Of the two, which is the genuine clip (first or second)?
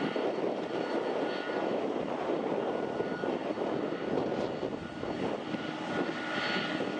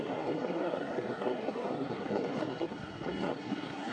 first